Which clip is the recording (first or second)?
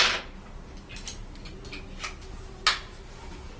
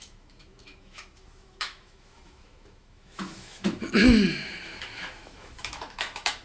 first